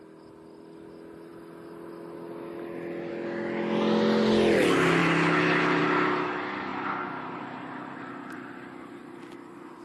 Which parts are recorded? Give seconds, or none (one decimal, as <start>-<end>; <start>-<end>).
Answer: 0.0-9.8

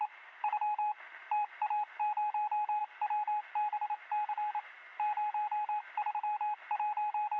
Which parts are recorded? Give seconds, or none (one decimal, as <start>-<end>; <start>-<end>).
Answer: 0.0-1.2; 2.0-7.4

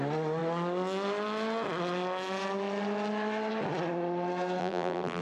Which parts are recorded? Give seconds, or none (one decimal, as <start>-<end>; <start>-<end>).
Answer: 0.0-4.6